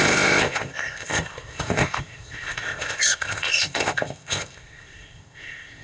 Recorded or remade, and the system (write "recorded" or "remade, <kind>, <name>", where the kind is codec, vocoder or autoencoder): remade, codec, ZipCodec